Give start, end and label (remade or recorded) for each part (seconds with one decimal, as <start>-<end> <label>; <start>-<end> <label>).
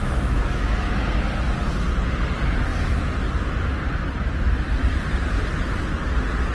0.0-1.0 remade; 1.0-6.5 recorded